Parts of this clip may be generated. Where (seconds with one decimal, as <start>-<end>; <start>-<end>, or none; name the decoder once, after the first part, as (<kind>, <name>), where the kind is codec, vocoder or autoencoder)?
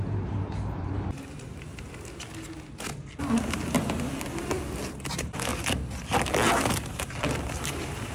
0.0-1.7 (vocoder, BigVGAN v2); 5.1-5.5; 6.9-8.1